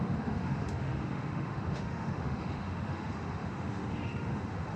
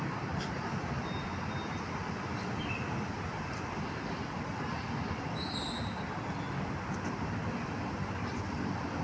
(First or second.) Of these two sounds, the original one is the second